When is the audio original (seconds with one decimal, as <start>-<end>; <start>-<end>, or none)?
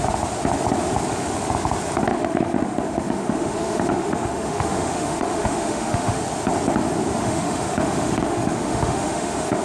0.0-2.1; 6.2-7.2